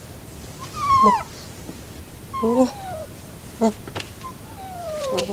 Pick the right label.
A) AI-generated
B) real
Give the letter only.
A